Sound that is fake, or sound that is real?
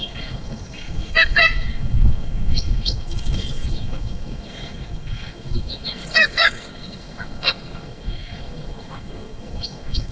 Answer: fake